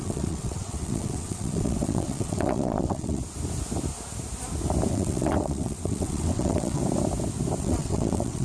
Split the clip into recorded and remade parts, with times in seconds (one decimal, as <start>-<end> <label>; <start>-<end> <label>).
0.0-3.2 remade; 3.2-4.9 recorded; 4.9-6.8 remade; 6.8-7.6 recorded; 7.6-8.4 remade